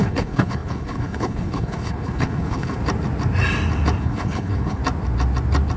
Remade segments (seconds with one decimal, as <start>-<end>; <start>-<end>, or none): 0.0-2.8; 4.0-4.8